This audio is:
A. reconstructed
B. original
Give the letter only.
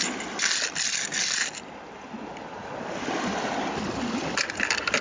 B